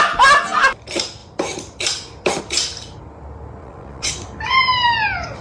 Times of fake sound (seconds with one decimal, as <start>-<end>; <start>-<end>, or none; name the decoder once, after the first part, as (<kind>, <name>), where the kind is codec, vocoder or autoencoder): 3.6-4.1 (vocoder, Vocos)

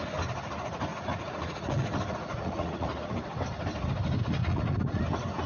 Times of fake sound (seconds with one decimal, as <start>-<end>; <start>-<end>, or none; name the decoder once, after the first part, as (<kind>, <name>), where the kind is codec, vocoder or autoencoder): 0.9-3.1 (vocoder, Vocos); 4.4-5.0

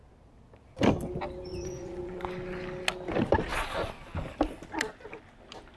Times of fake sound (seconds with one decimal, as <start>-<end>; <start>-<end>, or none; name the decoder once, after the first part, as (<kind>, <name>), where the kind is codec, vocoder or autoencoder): 1.5-2.2 (vocoder, Vocos)

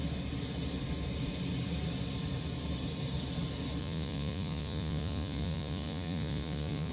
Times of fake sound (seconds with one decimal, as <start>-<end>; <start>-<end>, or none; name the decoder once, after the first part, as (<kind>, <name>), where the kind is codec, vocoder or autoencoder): 3.8-6.9 (vocoder, Vocos)

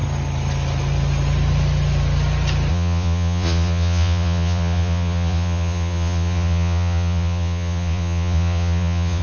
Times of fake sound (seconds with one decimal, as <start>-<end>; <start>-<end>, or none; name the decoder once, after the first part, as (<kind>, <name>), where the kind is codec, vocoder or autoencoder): 2.7-9.2 (vocoder, Vocos)

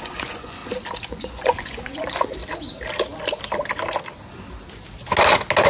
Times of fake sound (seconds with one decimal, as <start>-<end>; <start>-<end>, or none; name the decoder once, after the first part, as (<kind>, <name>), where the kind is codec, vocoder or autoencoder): 0.0-0.6 (vocoder, Vocos); 1.1-2.4

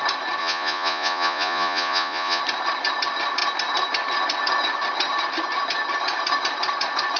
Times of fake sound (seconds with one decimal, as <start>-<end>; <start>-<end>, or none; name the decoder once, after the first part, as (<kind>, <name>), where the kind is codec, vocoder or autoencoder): 0.4-2.4 (vocoder, Vocos)

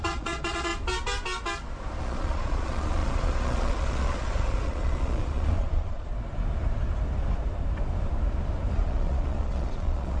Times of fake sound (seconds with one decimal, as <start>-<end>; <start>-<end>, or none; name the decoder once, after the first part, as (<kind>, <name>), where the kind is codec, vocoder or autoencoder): 0.0-0.7 (vocoder, Vocos); 2.0-6.1; 8.7-10.2